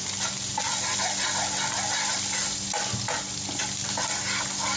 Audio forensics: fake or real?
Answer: real